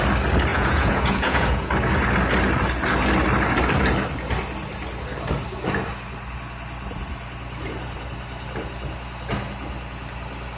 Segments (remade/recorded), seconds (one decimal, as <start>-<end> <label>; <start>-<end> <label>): 0.0-0.5 recorded; 0.5-1.7 remade; 1.7-10.6 recorded